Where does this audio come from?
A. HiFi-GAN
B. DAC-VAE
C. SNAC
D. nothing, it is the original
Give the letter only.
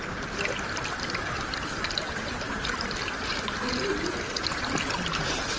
D